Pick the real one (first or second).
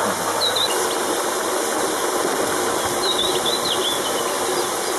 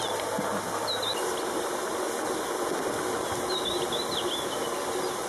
second